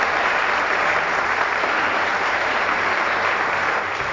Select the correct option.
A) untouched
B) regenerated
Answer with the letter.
B